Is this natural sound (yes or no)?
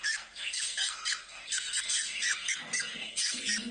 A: no